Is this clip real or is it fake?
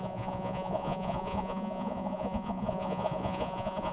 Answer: fake